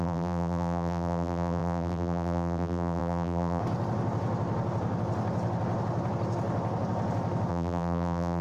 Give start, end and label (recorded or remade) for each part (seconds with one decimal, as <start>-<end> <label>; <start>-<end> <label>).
0.0-3.6 remade; 3.6-7.5 recorded; 7.5-8.4 remade